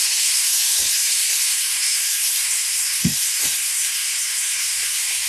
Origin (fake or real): fake